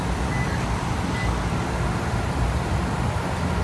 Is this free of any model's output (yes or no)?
yes